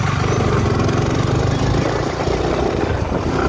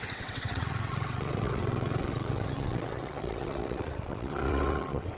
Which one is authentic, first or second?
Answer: first